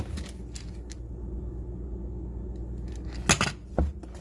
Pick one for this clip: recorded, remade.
recorded